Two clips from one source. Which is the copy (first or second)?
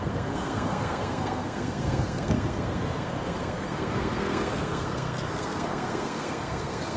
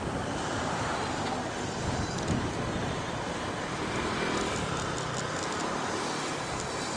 first